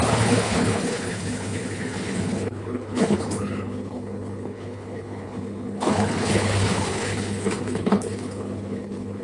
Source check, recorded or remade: remade